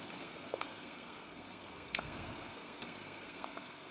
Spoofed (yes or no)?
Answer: yes